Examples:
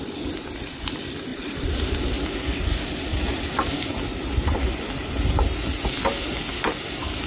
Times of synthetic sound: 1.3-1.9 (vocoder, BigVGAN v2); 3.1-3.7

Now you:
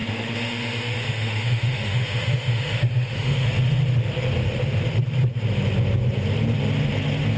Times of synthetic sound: 0.0-3.5 (autoencoder, DAC-VAE)

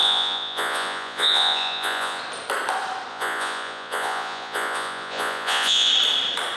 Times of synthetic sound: 0.0-2.2 (vocoder, Vocos); 3.1-5.9

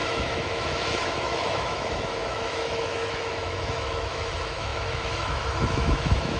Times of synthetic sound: 0.0-6.4 (autoencoder, DAC-VAE)